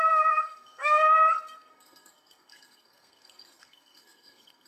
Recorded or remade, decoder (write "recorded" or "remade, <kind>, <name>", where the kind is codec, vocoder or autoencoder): remade, codec, SNAC